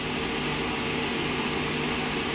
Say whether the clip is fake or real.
real